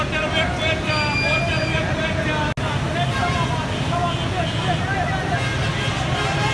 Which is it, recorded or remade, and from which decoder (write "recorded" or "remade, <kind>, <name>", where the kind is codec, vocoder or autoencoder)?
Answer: recorded